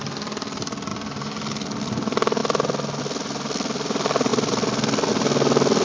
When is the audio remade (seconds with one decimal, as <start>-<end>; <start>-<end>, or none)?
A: none